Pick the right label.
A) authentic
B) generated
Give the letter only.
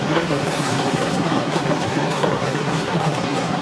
B